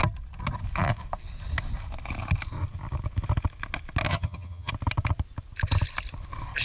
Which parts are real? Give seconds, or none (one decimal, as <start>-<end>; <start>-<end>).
0.0-4.1; 4.7-6.6